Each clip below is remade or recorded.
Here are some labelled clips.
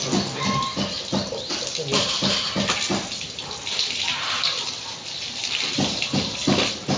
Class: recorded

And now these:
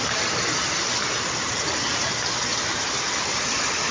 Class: recorded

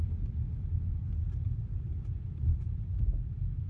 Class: recorded